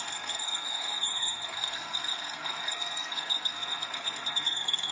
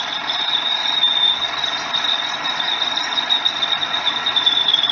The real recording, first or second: second